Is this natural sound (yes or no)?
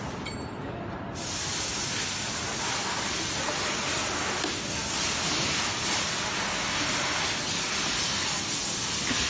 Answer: yes